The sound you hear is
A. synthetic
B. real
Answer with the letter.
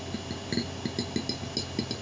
B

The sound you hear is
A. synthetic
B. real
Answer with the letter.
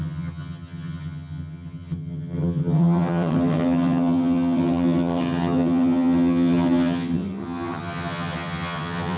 A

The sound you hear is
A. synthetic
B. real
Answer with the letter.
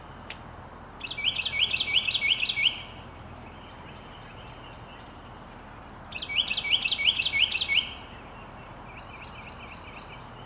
B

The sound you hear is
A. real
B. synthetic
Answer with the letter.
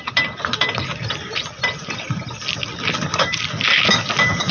A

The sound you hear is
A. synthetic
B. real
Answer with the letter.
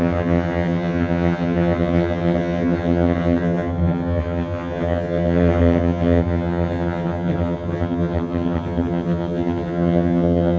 A